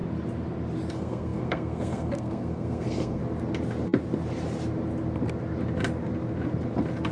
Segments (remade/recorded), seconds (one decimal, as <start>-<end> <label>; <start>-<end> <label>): 0.0-0.9 recorded; 0.9-3.2 remade; 3.2-7.1 recorded